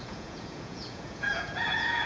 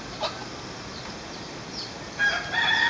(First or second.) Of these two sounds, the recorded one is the second